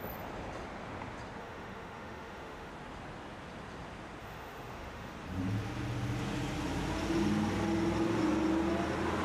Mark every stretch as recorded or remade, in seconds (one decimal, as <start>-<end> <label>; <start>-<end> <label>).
0.0-1.4 recorded; 1.4-2.7 remade; 2.7-4.2 recorded; 4.2-5.1 remade; 5.1-9.2 recorded